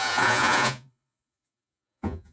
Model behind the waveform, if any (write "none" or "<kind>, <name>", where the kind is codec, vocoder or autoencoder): vocoder, Vocos